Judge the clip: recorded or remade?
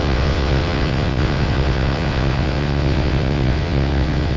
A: remade